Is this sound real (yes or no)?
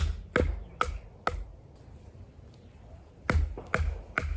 yes